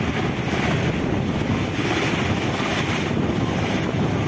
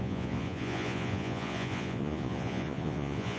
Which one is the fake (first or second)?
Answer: second